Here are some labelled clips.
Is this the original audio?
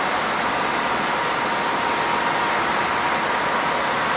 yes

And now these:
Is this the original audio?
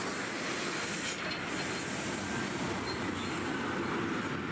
yes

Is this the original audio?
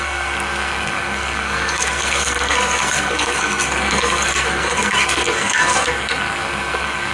no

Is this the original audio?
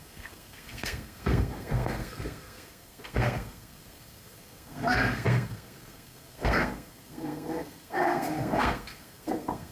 no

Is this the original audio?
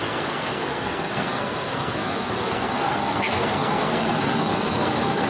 no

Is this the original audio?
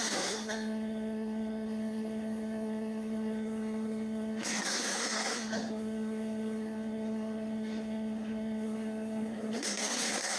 no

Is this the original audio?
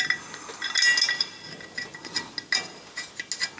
yes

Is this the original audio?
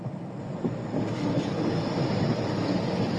yes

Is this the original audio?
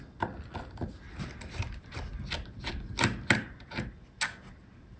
yes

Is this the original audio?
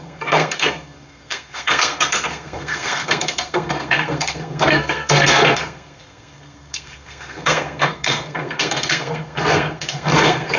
no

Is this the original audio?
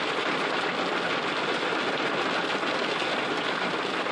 yes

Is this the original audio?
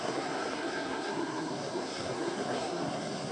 no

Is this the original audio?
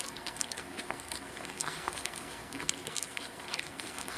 no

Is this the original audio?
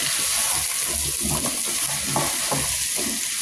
yes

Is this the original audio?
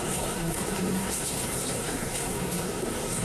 no